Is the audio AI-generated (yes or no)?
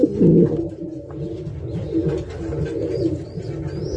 no